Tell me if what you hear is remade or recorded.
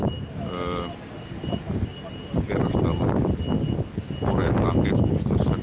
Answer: recorded